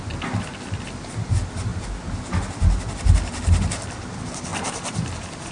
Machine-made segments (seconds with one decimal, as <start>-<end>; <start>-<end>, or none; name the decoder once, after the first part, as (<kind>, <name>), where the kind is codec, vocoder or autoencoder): none